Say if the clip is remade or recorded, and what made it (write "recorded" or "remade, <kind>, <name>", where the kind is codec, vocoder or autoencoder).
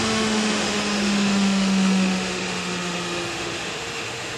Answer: remade, autoencoder, DAC-VAE